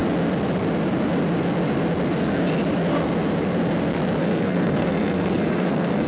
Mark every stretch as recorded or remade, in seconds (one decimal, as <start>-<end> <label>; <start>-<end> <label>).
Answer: 0.0-4.2 recorded; 4.2-6.1 remade